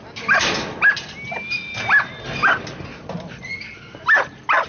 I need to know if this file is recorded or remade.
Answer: recorded